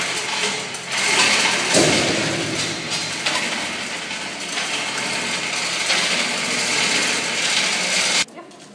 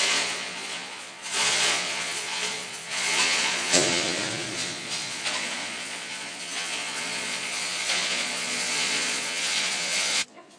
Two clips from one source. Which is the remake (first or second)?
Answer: second